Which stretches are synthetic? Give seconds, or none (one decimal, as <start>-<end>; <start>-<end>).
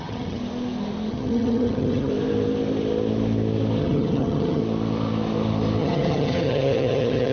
0.0-0.4; 1.1-2.1; 3.8-4.6; 5.8-7.3